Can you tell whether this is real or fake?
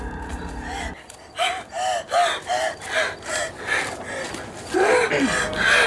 real